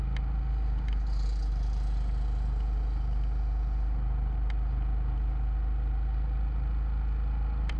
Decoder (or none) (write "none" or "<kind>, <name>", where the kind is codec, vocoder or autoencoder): none